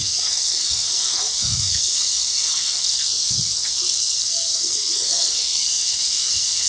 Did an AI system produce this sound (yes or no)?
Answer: yes